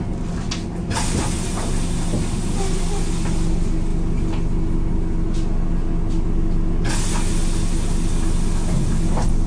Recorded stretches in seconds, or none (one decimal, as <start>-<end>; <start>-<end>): 0.0-9.5